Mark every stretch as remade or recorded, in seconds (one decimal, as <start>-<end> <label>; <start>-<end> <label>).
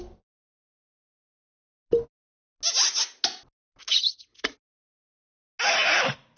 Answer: 0.0-6.4 recorded